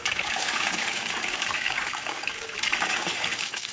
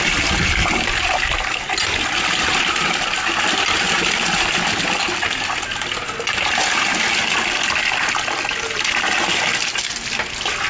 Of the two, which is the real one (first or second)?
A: second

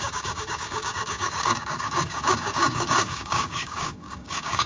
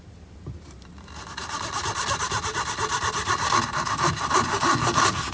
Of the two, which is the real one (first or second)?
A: second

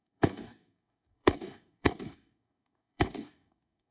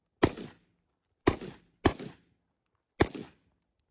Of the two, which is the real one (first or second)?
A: second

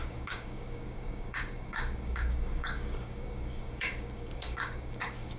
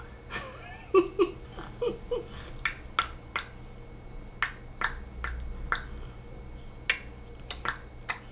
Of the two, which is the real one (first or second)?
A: second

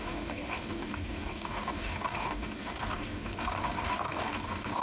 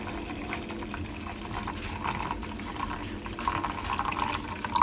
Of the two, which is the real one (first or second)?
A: second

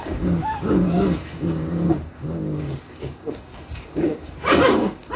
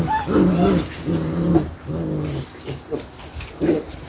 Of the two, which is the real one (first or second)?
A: second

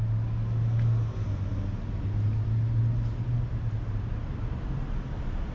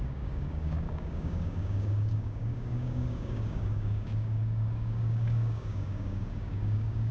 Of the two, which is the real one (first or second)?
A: first